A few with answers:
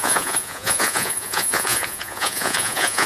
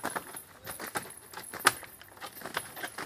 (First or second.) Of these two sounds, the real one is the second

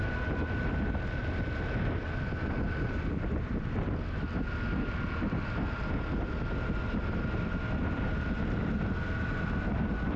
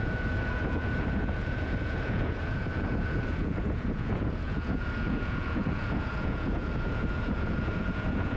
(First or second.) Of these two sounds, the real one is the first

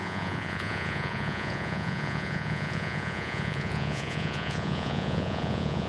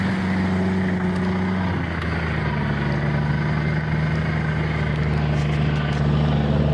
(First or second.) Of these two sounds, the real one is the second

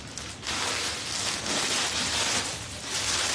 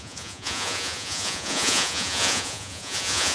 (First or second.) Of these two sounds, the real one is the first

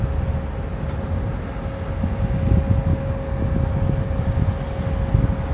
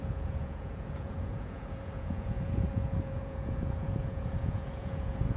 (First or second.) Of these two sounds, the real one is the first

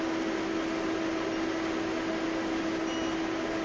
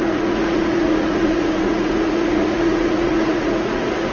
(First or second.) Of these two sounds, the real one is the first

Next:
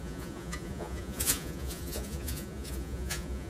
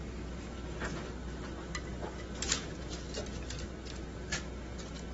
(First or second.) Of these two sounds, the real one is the second